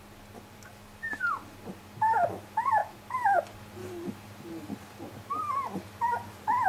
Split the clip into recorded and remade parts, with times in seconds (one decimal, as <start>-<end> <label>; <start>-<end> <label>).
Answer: 0.0-6.7 recorded